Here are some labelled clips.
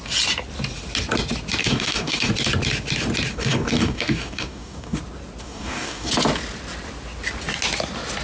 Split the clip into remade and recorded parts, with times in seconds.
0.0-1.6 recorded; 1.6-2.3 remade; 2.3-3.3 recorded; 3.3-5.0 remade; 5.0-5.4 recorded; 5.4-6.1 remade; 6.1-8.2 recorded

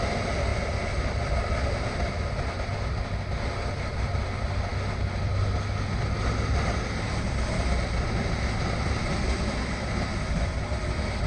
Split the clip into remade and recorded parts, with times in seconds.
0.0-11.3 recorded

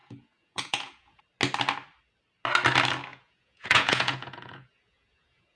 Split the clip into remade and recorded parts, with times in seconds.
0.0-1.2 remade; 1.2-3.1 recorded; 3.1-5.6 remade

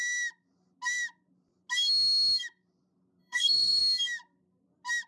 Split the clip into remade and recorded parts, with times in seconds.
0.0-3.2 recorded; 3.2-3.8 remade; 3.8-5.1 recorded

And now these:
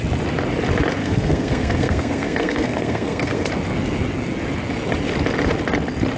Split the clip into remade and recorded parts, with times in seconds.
0.0-1.0 recorded; 1.0-3.5 remade; 3.5-6.2 recorded